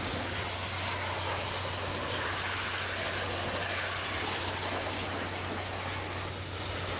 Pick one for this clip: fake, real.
real